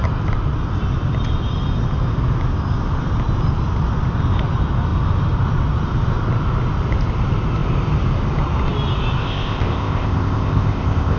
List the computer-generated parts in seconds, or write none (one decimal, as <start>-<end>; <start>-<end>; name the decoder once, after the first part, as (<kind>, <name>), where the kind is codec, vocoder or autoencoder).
9.2-11.2 (codec, ZipCodec)